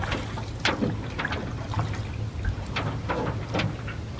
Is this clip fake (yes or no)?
no